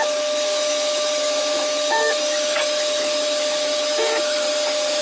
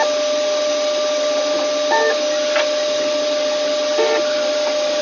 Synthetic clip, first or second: first